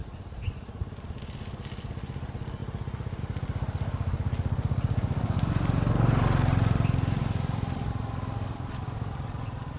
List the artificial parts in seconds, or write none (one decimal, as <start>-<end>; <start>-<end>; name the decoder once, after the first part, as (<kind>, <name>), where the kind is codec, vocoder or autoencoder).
0.0-0.9 (vocoder, BigVGAN v2)